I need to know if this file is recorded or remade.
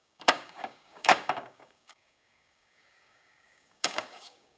remade